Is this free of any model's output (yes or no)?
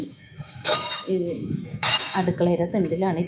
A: no